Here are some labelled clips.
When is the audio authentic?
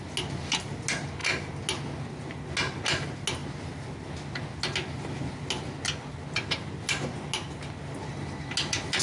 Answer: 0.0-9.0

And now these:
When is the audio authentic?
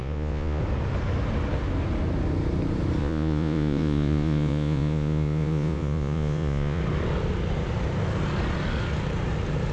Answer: 0.6-3.0; 6.8-9.7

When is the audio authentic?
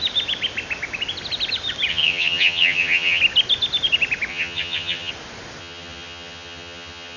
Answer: 0.0-1.9; 3.2-4.3; 5.1-5.6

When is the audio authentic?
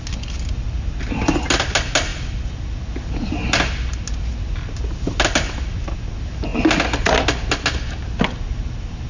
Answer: 0.0-9.1